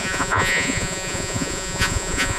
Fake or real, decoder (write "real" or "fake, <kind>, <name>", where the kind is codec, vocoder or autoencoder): fake, vocoder, Vocos